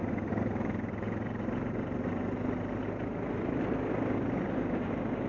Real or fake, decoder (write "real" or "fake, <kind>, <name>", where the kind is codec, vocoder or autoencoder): real